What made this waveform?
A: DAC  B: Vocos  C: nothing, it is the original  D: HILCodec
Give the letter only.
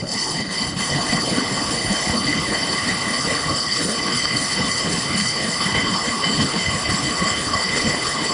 D